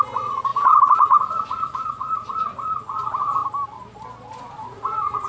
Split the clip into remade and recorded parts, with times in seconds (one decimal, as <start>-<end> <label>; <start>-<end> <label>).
0.0-3.4 remade; 3.4-4.4 recorded; 4.4-5.3 remade